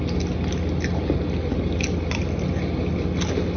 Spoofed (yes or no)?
no